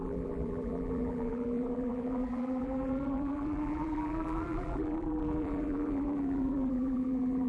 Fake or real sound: fake